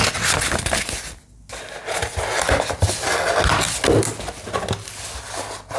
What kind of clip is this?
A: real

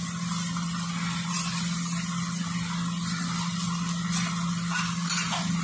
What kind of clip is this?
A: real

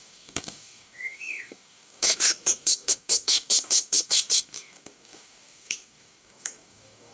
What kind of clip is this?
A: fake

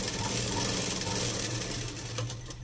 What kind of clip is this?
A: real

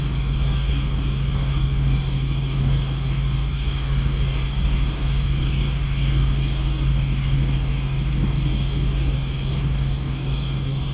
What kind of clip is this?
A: fake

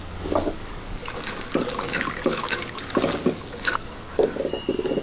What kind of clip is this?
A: fake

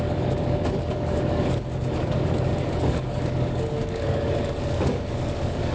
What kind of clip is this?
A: fake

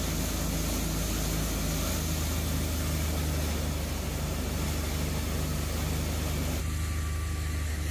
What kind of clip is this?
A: real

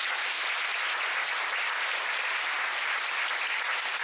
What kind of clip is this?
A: real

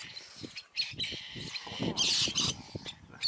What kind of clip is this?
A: real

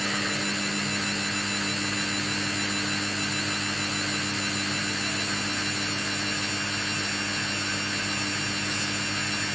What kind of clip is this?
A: real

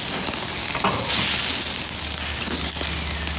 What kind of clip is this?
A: real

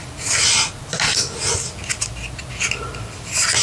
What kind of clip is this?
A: real